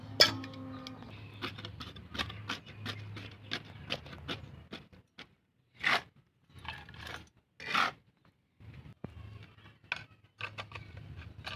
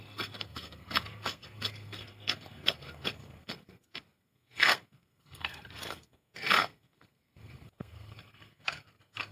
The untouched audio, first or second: first